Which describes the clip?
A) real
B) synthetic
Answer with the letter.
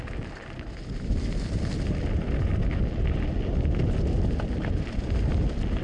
A